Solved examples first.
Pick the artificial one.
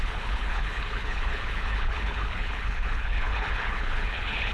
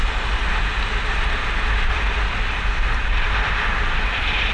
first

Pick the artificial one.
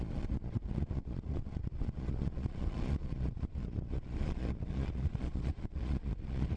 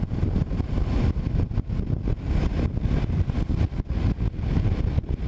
first